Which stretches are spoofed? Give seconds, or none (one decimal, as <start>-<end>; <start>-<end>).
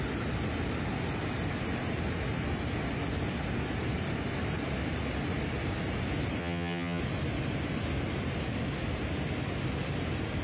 6.4-7.0